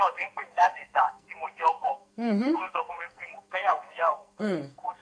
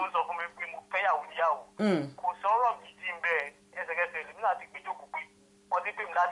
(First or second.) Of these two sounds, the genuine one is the second